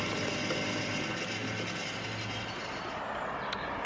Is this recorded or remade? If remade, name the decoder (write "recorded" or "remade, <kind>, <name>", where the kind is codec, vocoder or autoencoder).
recorded